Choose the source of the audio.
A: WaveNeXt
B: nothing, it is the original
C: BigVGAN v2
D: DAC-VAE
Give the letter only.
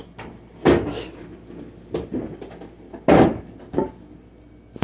B